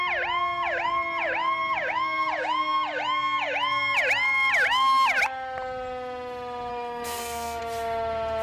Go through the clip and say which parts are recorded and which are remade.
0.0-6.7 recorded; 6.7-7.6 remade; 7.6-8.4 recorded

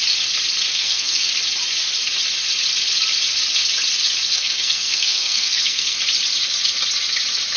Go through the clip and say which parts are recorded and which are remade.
0.0-0.7 recorded; 0.7-1.3 remade; 1.3-4.3 recorded; 4.3-6.0 remade; 6.0-7.6 recorded

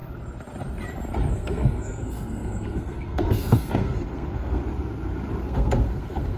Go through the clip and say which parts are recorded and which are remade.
0.0-1.3 recorded; 1.3-4.6 remade; 4.6-5.4 recorded; 5.4-6.4 remade